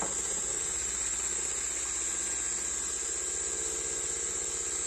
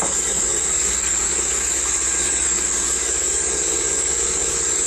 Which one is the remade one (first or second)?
second